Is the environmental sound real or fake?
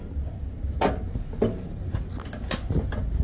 real